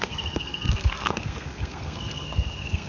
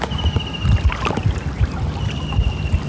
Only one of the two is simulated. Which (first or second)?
first